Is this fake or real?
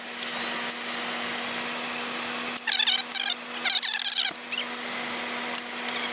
real